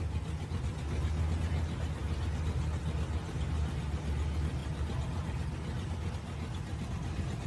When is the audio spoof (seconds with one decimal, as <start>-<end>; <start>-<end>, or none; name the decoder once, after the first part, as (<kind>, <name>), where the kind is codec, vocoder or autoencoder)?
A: none